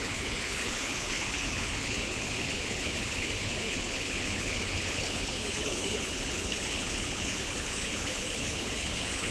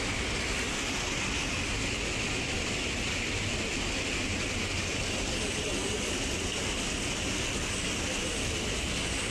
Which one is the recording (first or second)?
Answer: second